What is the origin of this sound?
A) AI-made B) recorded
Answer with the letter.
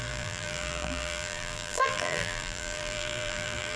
A